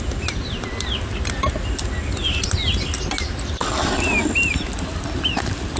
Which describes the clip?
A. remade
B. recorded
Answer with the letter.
B